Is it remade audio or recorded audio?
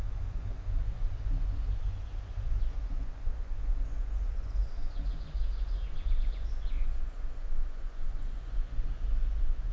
remade